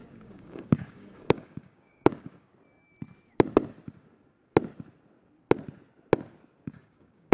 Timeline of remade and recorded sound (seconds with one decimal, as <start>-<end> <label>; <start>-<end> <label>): 0.0-2.5 remade; 2.5-6.6 recorded; 6.6-7.3 remade